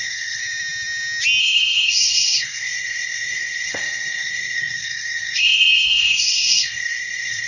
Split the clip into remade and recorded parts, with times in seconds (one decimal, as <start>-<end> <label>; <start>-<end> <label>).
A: 0.0-0.4 remade; 0.4-1.4 recorded; 1.4-7.5 remade